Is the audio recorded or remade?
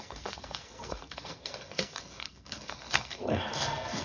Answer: remade